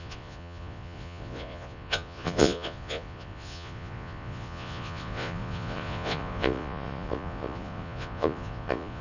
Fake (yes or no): yes